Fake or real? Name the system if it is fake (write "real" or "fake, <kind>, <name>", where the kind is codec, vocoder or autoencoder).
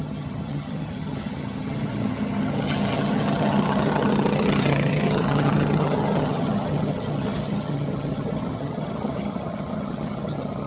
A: fake, vocoder, HiFi-GAN